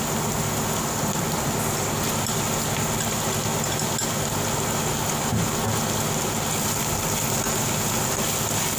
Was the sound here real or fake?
real